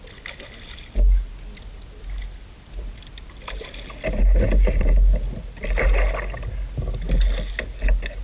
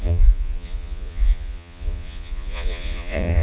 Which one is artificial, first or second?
second